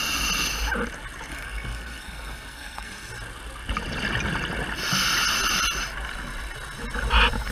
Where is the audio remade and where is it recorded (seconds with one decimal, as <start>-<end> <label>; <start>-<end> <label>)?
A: 0.0-1.3 recorded; 1.3-3.1 remade; 3.1-7.5 recorded

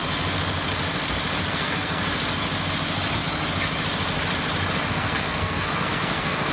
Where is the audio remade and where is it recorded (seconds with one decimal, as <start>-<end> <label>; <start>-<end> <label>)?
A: 0.0-1.5 recorded; 1.5-2.0 remade; 2.0-4.9 recorded; 4.9-6.5 remade

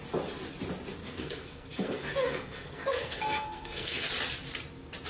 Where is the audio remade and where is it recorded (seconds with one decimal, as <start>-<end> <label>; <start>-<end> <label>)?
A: 0.0-1.0 recorded; 1.0-4.1 remade; 4.1-5.1 recorded

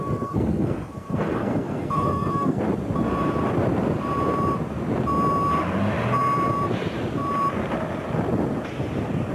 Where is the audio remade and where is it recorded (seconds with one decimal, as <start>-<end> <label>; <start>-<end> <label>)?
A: 0.0-2.6 remade; 2.6-9.3 recorded

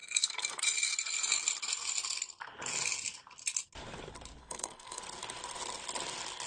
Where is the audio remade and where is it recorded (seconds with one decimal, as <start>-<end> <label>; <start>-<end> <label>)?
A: 0.0-0.6 remade; 0.6-4.4 recorded; 4.4-5.0 remade; 5.0-6.5 recorded

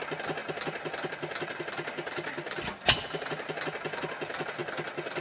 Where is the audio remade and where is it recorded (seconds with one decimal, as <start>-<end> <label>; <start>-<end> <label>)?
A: 0.0-5.2 recorded

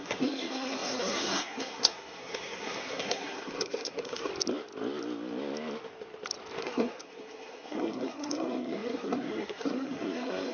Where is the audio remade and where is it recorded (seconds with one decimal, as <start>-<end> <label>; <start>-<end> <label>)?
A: 0.0-4.3 remade; 4.3-6.6 recorded; 6.6-10.5 remade